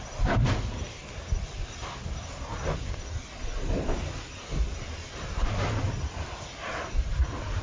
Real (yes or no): yes